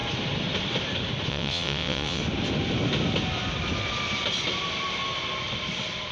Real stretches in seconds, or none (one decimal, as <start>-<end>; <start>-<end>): 0.0-1.3; 2.2-6.1